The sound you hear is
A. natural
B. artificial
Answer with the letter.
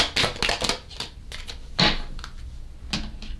A